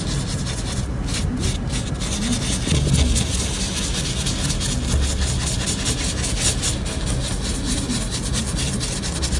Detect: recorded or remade recorded